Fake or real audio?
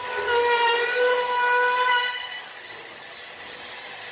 real